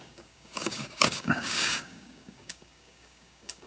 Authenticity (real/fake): fake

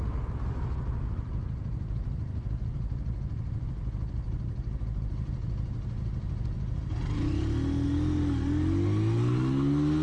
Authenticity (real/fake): real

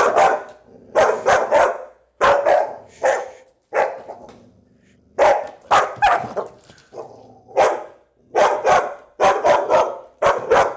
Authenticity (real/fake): real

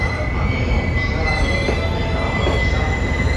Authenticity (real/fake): real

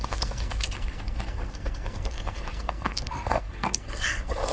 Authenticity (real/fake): fake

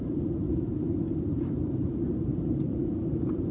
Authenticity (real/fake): fake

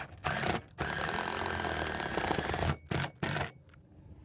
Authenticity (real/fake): real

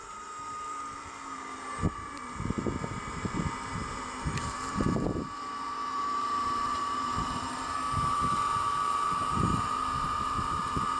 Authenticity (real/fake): fake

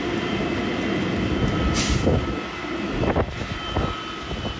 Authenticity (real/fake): real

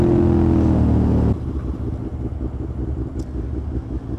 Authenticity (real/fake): real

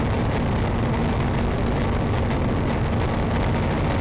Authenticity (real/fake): real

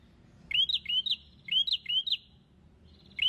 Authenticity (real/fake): real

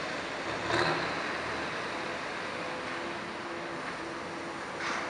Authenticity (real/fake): real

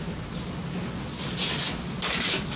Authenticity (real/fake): real